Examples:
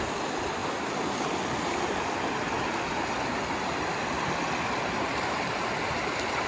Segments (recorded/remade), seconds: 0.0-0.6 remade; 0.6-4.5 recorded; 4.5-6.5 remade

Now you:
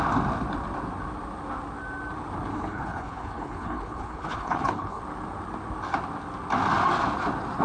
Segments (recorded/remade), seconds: 0.0-2.5 recorded; 2.5-5.0 remade; 5.0-7.6 recorded

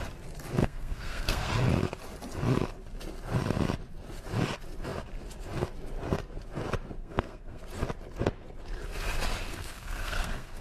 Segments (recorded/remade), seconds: 0.0-0.6 recorded; 0.6-1.5 remade; 1.5-7.0 recorded; 7.0-7.6 remade; 7.6-9.5 recorded; 9.5-10.6 remade

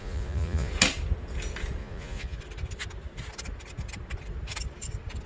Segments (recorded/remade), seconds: 0.0-0.7 remade; 0.7-1.8 recorded; 1.8-2.4 remade; 2.4-5.3 recorded

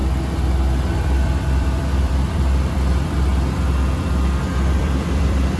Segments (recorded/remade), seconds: 0.0-0.9 recorded; 0.9-3.3 remade; 3.3-4.4 recorded; 4.4-5.6 remade

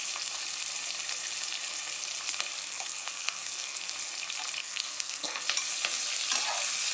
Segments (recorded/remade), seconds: 0.0-2.6 recorded; 2.6-3.9 remade; 3.9-4.6 recorded; 4.6-5.4 remade; 5.4-6.9 recorded

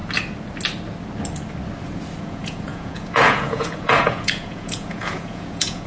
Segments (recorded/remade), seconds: 0.0-2.2 recorded; 2.2-5.9 remade

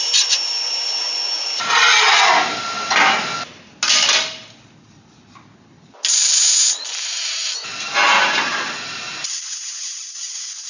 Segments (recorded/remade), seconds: 0.0-8.0 recorded; 8.0-8.6 remade; 8.6-10.7 recorded